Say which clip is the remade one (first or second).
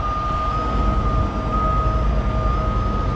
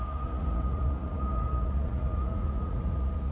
second